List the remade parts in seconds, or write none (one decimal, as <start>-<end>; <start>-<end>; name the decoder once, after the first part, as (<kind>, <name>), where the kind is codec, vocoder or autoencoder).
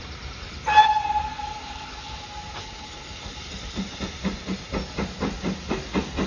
1.6-2.2 (codec, HILCodec); 2.6-3.2